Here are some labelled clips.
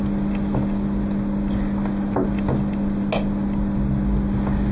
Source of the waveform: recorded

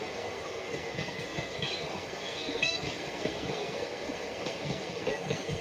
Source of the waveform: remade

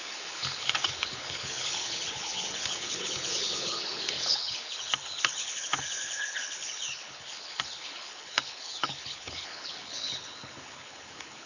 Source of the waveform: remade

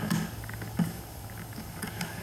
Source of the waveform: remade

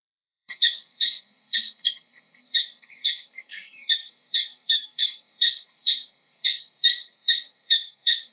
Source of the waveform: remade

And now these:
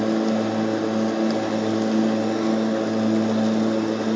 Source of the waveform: recorded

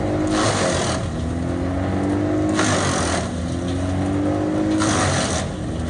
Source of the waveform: recorded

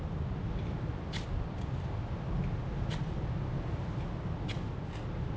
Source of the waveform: recorded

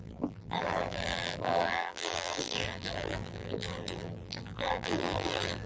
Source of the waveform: remade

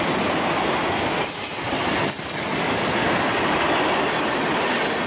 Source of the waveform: recorded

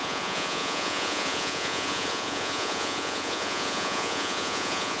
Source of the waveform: remade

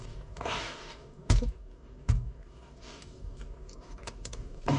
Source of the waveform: remade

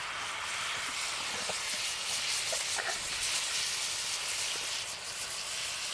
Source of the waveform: recorded